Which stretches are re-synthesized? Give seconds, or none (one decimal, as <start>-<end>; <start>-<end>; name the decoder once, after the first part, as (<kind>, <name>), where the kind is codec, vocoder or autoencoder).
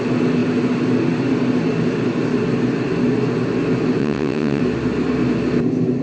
4.0-4.6 (vocoder, WaveNeXt)